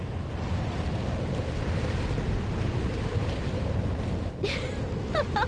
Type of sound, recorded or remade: recorded